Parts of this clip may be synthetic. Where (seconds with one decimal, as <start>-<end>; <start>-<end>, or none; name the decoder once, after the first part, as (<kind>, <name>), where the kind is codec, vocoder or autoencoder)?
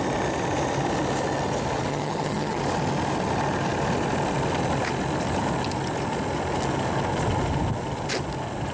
1.9-2.6 (vocoder, HiFi-GAN)